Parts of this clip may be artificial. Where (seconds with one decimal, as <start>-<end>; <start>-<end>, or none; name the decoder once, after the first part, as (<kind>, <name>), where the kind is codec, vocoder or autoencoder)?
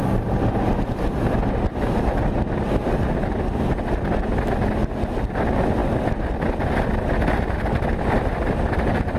none